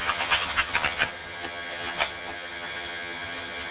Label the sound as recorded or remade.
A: remade